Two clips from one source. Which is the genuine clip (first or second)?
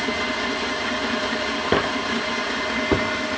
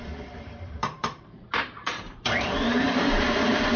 first